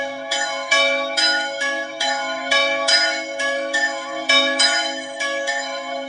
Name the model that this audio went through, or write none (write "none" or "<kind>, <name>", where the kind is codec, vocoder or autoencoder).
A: autoencoder, DAC-VAE